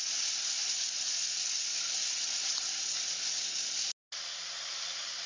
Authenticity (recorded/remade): recorded